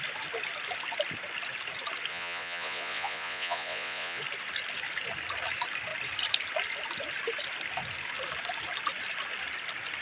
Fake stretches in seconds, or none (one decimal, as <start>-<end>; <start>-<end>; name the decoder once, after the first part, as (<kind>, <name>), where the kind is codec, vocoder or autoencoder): 2.1-4.2 (vocoder, Vocos)